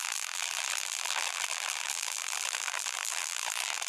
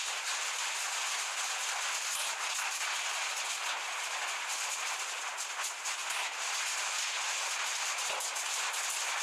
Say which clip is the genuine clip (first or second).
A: second